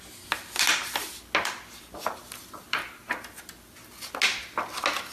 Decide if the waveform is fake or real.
real